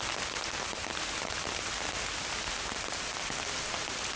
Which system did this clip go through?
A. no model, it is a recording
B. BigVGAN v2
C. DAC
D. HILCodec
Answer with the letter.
A